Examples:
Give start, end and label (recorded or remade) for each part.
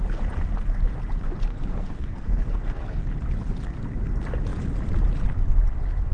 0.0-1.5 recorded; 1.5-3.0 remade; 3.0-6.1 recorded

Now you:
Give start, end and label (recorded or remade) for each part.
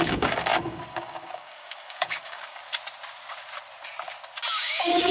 0.0-2.6 remade; 2.6-4.5 recorded; 4.5-5.1 remade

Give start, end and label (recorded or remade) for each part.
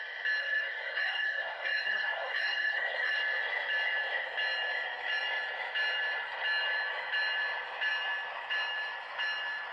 0.0-0.4 recorded; 0.4-3.2 remade; 3.2-9.7 recorded